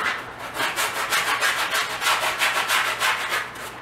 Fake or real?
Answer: real